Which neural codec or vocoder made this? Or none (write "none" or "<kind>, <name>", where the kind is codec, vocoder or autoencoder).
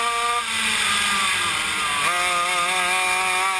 none